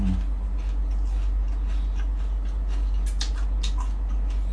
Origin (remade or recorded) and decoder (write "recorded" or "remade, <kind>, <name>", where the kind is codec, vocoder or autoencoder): recorded